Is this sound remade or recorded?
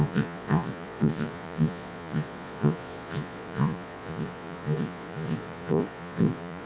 remade